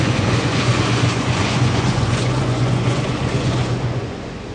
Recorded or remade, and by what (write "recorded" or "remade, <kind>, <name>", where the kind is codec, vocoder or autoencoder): remade, vocoder, Vocos